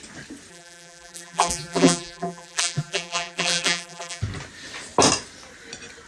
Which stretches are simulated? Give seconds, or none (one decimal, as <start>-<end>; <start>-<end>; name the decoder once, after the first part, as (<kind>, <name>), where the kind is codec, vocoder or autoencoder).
0.5-4.2 (vocoder, BigVGAN v2)